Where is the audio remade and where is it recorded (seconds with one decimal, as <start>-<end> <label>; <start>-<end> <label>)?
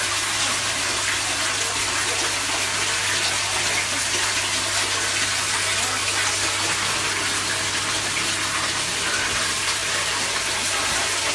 0.0-11.3 recorded